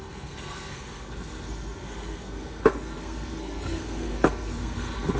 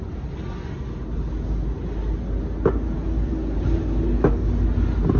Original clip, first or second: second